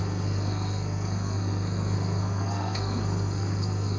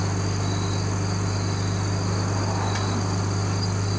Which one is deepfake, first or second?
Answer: first